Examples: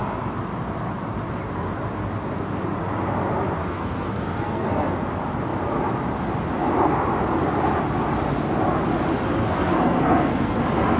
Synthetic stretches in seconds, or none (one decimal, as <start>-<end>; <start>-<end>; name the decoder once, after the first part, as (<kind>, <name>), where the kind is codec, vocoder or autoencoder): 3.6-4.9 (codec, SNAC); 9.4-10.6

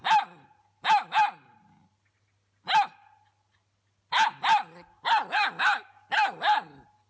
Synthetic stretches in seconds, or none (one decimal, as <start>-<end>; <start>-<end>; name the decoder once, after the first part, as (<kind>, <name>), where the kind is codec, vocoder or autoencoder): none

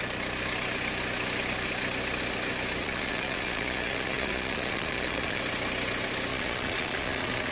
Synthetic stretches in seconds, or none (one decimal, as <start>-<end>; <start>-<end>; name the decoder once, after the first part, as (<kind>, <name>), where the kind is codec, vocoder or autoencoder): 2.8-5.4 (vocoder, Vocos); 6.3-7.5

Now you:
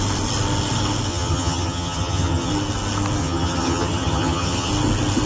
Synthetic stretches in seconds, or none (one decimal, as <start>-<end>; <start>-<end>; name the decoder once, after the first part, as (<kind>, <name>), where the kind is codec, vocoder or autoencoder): 1.1-2.5 (vocoder, HiFi-GAN); 3.2-4.7

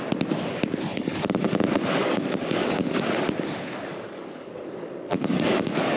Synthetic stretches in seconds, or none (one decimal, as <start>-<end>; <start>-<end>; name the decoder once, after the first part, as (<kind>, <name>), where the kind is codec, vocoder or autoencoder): 0.9-1.6 (codec, DAC); 2.0-3.0; 3.9-6.0